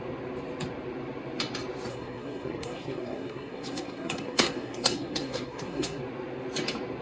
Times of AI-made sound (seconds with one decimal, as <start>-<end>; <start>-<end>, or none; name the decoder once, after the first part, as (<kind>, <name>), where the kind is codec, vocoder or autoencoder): 1.9-6.0 (codec, SNAC)

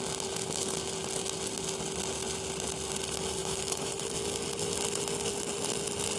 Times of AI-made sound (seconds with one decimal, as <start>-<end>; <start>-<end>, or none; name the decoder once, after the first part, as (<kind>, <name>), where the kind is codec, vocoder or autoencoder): 3.4-4.1 (autoencoder, DAC-VAE)